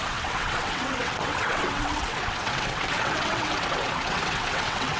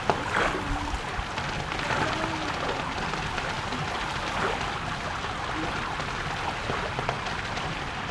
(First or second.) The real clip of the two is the second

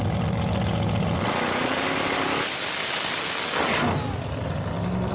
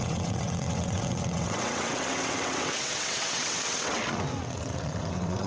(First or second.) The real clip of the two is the first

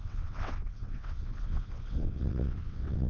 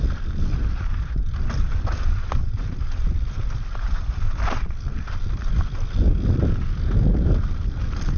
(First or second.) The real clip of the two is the second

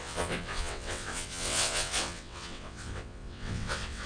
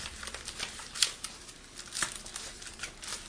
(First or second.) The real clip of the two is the second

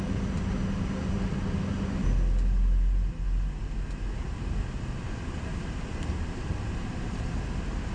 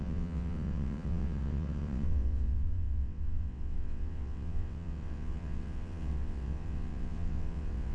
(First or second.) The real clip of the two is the first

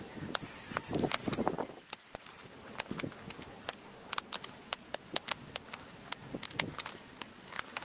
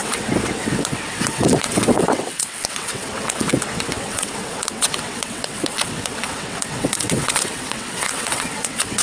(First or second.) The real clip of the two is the first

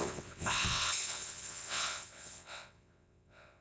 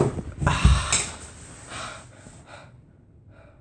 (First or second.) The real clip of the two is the second